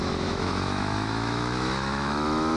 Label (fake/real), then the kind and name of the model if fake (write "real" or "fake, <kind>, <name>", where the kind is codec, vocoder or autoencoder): fake, autoencoder, DAC-VAE